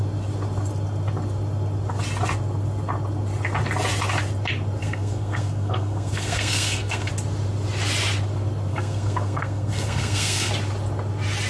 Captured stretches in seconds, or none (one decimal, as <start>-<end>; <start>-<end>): 0.0-4.8; 7.1-8.7; 10.5-11.5

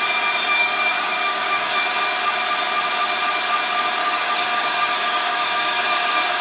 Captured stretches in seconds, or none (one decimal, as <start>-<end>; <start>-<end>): 0.0-0.6; 1.8-4.0

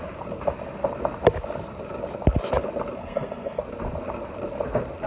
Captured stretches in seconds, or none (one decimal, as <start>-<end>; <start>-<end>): 0.0-3.0; 3.6-5.1